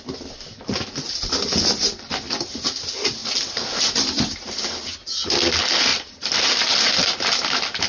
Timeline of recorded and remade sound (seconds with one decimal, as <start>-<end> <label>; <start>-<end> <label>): 0.0-5.9 recorded; 5.9-6.8 remade; 6.8-7.9 recorded

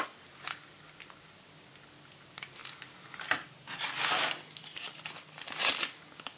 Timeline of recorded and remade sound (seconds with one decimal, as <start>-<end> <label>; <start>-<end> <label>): 0.0-6.4 recorded

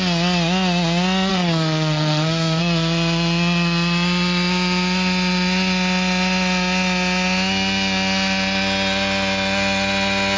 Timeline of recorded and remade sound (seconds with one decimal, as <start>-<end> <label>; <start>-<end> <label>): 0.0-1.3 recorded; 1.3-2.6 remade; 2.6-10.4 recorded

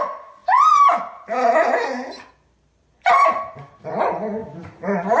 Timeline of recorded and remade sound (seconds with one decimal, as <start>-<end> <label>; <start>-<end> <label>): 0.0-4.4 recorded; 4.4-5.2 remade